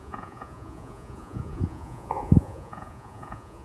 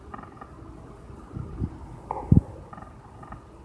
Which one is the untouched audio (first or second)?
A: second